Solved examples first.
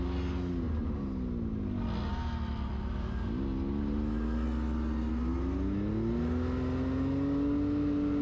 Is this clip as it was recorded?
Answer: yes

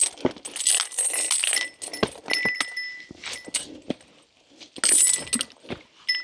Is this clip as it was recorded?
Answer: yes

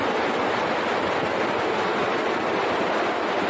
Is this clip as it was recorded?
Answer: yes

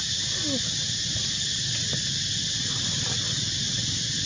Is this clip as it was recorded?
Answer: yes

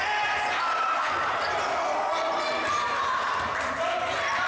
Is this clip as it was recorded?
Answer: yes